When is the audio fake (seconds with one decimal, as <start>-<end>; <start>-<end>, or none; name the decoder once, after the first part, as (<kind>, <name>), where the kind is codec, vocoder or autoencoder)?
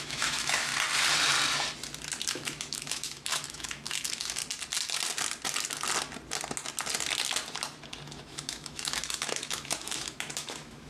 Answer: 0.0-0.7 (autoencoder, DAC-VAE); 2.3-4.4; 8.2-10.9